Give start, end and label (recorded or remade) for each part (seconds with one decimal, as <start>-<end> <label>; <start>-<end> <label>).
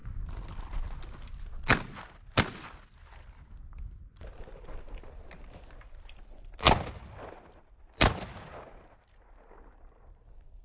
0.0-10.6 recorded